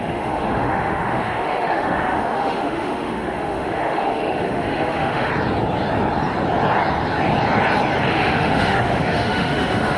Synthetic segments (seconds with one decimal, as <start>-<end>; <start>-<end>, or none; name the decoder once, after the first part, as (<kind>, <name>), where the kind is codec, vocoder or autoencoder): 0.0-5.3 (autoencoder, DAC-VAE); 8.1-10.0